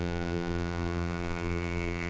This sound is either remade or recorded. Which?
remade